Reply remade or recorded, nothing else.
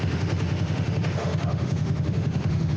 remade